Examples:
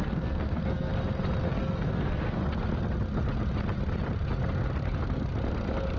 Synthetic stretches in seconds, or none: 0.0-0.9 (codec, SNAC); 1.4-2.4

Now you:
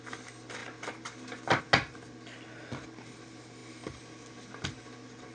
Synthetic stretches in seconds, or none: none